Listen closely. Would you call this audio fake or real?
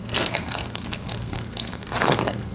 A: fake